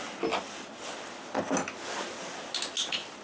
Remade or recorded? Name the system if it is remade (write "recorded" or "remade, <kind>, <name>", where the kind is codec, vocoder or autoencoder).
recorded